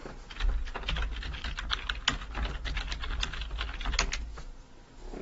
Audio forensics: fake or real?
real